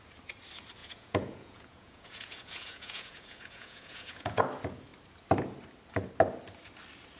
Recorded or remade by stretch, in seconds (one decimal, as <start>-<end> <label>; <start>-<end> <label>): 0.0-0.8 recorded; 0.8-4.4 remade; 4.4-7.2 recorded